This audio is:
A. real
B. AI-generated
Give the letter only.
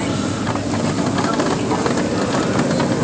A